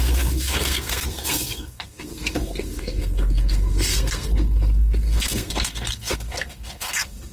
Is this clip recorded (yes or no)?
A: no